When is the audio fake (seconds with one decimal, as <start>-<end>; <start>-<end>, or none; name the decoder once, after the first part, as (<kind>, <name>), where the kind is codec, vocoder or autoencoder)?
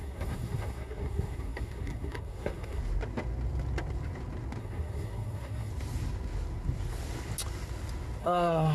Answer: 0.0-2.8 (codec, SNAC); 4.6-5.7; 8.2-8.7